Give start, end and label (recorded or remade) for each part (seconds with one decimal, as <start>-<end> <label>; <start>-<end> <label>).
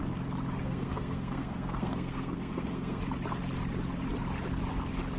0.0-0.6 recorded; 0.6-3.0 remade; 3.0-5.2 recorded